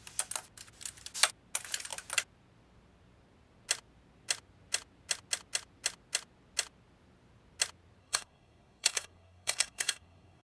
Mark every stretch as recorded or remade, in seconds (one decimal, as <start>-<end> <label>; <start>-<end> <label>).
0.0-8.0 recorded; 8.0-10.5 remade